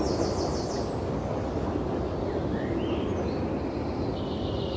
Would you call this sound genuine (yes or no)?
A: yes